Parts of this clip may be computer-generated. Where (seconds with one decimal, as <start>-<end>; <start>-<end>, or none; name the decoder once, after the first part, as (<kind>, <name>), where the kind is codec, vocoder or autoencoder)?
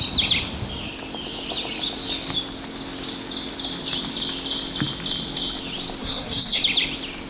6.0-6.6 (codec, SNAC)